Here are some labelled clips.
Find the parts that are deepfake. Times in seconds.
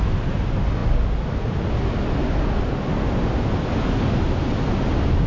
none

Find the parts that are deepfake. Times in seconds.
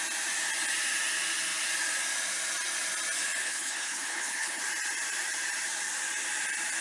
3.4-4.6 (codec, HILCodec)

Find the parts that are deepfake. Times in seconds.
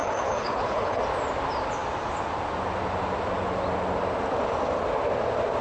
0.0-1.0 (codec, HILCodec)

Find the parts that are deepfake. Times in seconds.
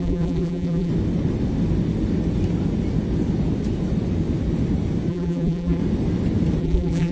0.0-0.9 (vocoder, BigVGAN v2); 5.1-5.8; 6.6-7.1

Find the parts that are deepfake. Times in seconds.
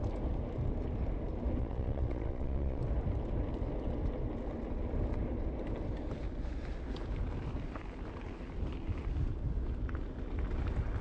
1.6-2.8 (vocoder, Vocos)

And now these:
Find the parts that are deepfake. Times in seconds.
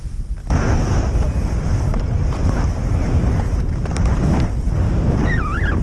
none